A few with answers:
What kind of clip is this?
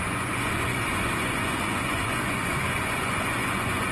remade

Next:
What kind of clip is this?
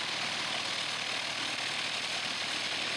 recorded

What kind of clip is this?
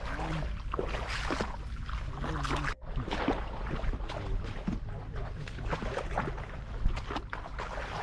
recorded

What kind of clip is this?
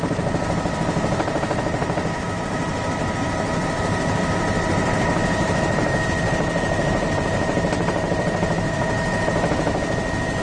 remade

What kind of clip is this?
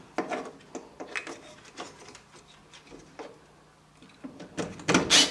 recorded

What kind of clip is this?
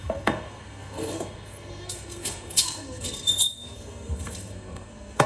remade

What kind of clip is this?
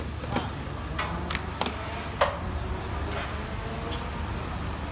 recorded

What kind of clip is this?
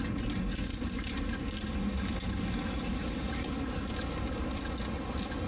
recorded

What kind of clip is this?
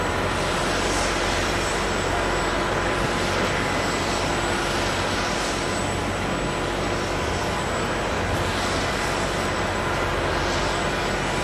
recorded